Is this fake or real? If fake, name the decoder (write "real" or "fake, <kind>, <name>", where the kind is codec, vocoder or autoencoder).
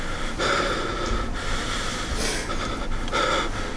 real